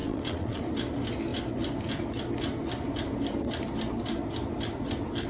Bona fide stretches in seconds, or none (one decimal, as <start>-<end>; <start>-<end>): 0.6-5.3